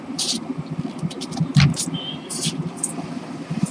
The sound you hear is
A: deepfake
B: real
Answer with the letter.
A